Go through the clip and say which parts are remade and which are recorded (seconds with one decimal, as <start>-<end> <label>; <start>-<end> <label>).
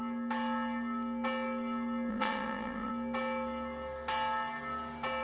0.0-2.1 recorded; 2.1-2.9 remade; 2.9-5.2 recorded